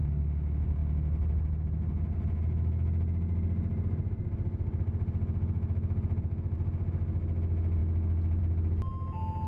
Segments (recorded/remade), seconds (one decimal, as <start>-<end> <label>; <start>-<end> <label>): 0.0-9.5 recorded